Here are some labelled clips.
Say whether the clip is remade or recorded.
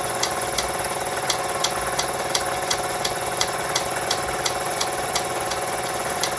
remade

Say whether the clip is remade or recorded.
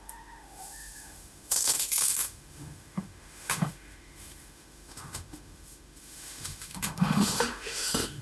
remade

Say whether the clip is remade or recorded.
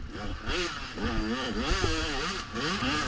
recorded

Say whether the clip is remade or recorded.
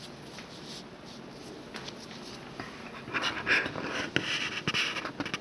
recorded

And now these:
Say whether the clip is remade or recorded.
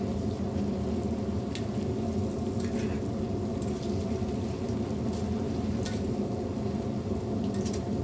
recorded